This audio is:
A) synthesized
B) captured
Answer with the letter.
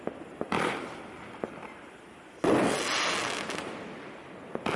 B